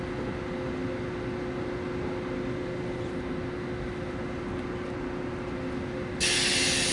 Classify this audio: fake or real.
real